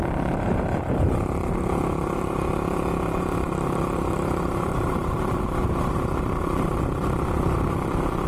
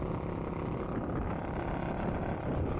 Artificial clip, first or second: first